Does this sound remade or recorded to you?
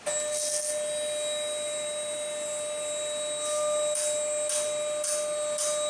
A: recorded